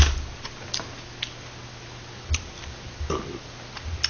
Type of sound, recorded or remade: recorded